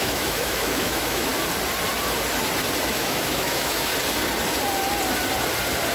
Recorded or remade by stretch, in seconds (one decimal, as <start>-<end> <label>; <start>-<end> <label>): 0.0-1.3 remade; 1.3-2.9 recorded; 2.9-3.9 remade; 3.9-5.9 recorded